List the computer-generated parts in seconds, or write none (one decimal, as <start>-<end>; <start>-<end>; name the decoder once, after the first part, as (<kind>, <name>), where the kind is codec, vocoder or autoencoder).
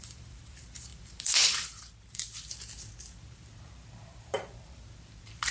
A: 0.0-5.5 (vocoder, BigVGAN v2)